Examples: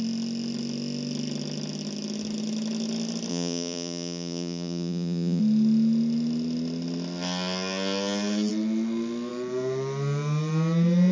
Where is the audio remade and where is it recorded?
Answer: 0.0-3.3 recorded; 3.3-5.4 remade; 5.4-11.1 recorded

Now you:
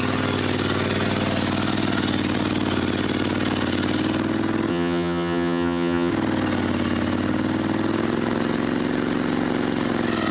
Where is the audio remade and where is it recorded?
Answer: 0.0-4.7 recorded; 4.7-6.1 remade; 6.1-10.3 recorded

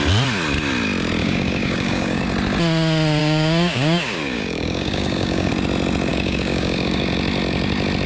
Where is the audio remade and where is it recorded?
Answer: 0.0-1.2 recorded; 1.2-2.2 remade; 2.2-3.2 recorded; 3.2-5.5 remade; 5.5-6.1 recorded; 6.1-7.0 remade; 7.0-8.1 recorded